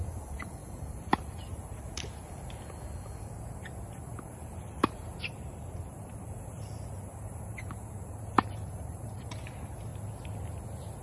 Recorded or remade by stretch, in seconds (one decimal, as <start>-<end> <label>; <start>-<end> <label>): 0.0-0.6 recorded; 0.6-1.8 remade; 1.8-4.1 recorded; 4.1-9.3 remade; 9.3-11.0 recorded